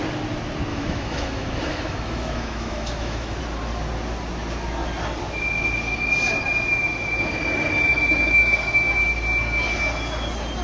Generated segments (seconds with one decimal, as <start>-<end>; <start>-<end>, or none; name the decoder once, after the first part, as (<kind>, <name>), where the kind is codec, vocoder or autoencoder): 0.7-3.4 (autoencoder, DAC-VAE); 6.7-7.3; 7.9-9.0